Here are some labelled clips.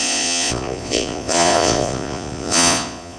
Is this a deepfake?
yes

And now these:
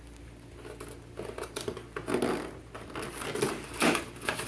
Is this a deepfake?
no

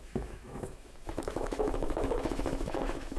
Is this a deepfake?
yes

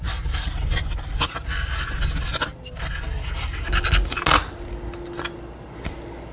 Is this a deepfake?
no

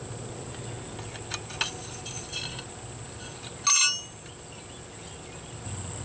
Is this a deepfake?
no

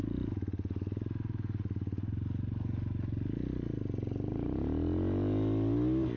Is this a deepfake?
no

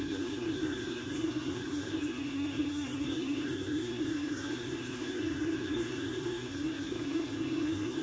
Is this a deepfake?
yes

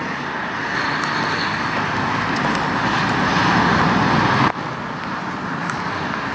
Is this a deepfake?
no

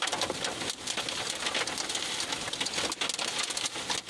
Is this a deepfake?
no